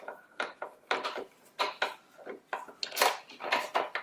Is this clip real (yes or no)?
yes